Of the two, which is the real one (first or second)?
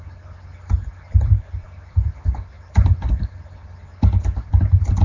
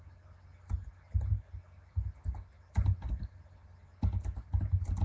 second